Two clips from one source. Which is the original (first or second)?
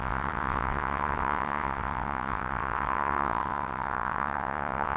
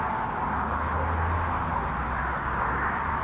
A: second